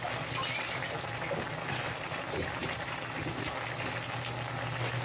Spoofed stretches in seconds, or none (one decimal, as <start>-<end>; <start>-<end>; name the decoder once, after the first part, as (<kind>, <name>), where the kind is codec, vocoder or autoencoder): 2.6-3.1 (vocoder, BigVGAN v2)